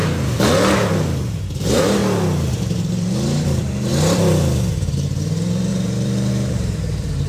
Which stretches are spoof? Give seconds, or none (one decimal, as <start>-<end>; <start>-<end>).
0.9-2.0; 2.5-3.9; 4.7-7.3